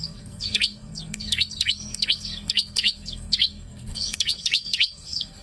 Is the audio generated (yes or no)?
yes